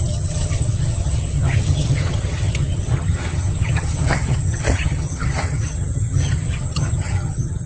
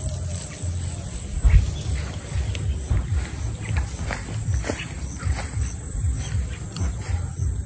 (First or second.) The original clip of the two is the second